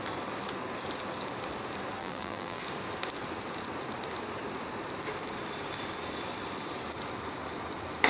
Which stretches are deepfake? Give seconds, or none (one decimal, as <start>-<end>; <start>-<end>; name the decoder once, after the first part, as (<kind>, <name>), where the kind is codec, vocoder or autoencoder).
2.0-2.6 (vocoder, BigVGAN v2)